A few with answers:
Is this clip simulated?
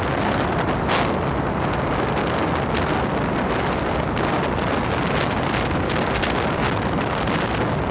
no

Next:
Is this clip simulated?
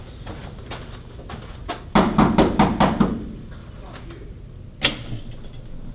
no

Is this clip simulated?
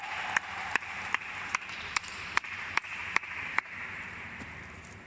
yes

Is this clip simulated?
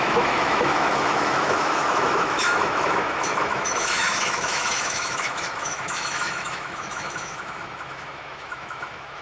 yes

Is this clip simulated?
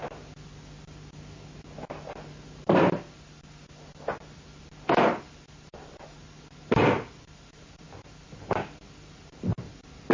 no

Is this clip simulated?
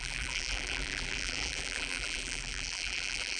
yes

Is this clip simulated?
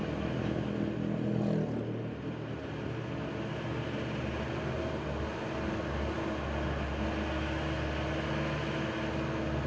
no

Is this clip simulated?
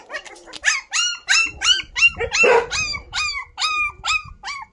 no